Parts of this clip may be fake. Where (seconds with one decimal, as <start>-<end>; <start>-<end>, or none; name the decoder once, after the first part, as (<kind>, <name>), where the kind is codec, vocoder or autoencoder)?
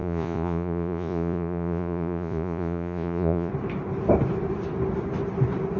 0.0-3.5 (vocoder, Vocos)